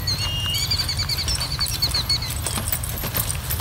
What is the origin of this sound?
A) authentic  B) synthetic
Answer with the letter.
A